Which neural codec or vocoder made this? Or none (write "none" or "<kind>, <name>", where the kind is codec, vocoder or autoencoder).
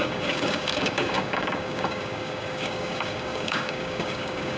codec, DAC